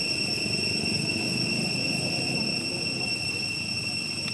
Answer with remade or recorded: recorded